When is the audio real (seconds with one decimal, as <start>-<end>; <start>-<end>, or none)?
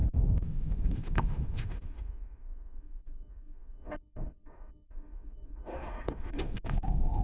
none